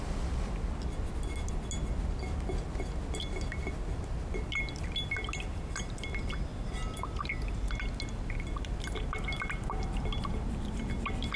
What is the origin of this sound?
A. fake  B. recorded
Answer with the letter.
B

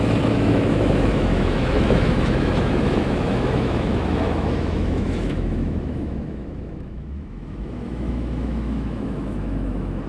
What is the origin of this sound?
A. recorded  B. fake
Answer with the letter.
B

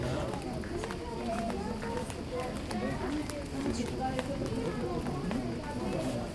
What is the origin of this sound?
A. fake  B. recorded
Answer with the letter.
B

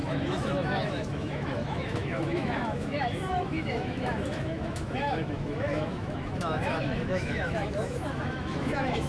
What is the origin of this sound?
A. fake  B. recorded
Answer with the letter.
A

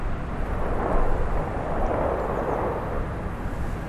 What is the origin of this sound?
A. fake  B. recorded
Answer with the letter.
B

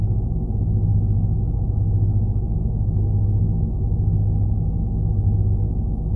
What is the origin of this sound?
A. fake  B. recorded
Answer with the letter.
A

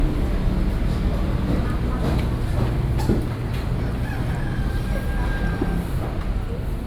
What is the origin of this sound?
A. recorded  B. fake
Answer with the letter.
A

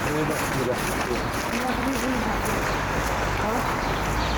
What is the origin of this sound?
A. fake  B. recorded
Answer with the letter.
B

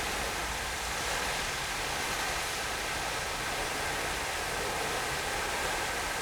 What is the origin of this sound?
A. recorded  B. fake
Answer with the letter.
A